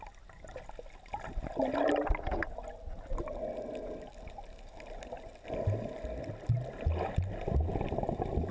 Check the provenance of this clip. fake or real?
real